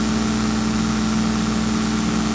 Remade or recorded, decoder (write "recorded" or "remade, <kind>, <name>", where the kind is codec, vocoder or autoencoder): recorded